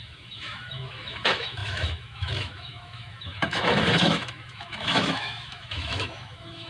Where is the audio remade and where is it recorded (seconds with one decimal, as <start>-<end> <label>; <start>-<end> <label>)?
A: 0.0-6.7 remade